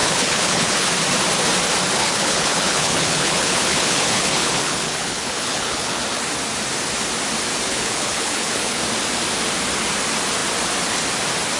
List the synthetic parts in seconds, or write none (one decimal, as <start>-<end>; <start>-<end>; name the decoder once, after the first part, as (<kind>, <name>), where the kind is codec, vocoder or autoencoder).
0.0-0.9 (codec, HILCodec); 2.0-6.0; 7.7-8.8